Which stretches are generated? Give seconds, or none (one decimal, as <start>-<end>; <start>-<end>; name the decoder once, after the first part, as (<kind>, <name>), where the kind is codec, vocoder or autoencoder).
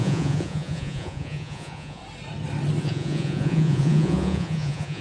0.0-2.0 (vocoder, Vocos); 2.8-5.0